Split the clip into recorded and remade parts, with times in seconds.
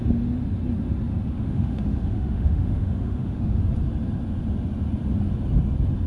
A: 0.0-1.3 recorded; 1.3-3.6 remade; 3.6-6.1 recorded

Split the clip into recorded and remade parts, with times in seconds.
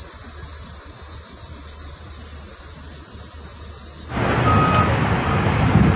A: 0.0-6.0 recorded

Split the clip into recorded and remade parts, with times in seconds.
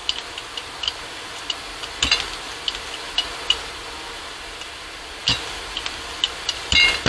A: 0.0-7.1 recorded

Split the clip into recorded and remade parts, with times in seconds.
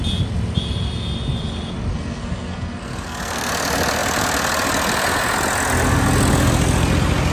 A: 0.0-1.9 recorded; 1.9-3.5 remade; 3.5-7.3 recorded